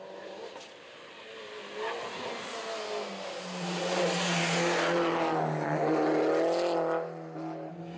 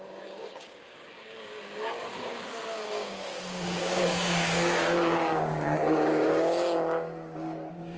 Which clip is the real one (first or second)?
first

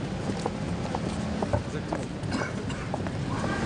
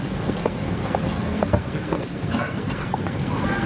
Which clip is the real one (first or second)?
first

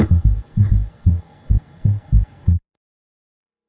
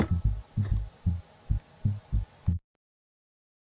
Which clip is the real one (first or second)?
second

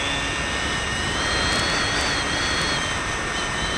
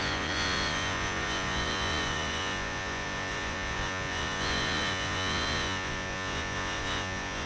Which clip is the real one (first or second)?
first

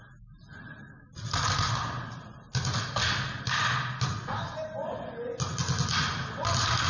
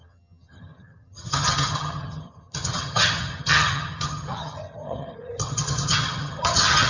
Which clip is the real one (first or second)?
first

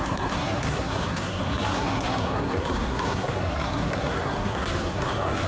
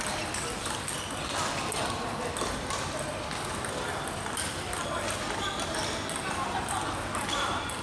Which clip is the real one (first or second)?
second